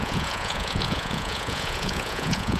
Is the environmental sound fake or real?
fake